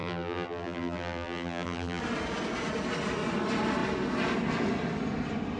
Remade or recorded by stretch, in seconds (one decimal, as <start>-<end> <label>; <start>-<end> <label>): 0.0-2.0 remade; 2.0-5.6 recorded